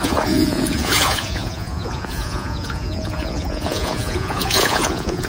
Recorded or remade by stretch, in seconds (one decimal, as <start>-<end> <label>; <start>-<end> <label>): 0.0-5.3 remade